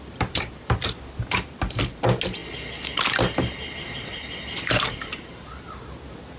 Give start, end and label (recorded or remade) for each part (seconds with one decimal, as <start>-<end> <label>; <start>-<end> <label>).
0.0-6.4 recorded